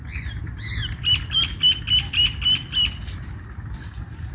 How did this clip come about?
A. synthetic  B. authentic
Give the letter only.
B